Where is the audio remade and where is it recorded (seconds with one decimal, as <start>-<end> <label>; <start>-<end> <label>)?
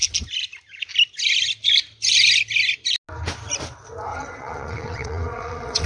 0.0-4.1 recorded; 4.1-5.9 remade